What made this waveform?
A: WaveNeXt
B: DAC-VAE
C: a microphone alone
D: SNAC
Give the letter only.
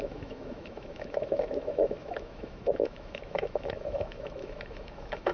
B